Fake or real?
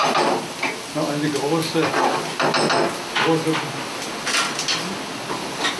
real